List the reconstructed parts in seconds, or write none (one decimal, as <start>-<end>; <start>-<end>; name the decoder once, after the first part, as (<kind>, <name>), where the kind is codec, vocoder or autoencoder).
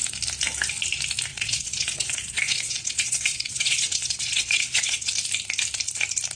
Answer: 1.3-5.1 (vocoder, Vocos)